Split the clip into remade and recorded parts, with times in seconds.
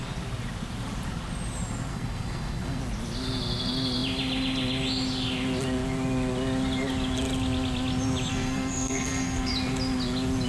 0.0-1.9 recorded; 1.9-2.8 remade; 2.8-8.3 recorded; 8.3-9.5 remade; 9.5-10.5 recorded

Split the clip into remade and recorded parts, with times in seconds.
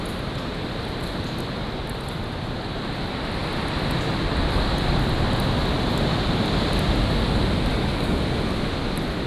0.0-7.7 recorded; 7.7-8.2 remade; 8.2-9.3 recorded